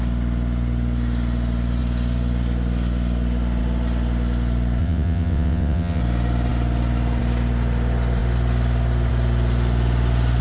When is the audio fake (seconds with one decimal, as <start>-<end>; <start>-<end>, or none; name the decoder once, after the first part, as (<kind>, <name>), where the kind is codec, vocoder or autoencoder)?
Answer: 4.8-6.0 (vocoder, WaveNeXt)

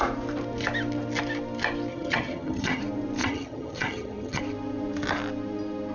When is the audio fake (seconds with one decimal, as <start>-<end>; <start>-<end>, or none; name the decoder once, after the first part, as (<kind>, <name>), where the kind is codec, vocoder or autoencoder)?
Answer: 1.9-2.8 (vocoder, HiFi-GAN); 3.2-4.4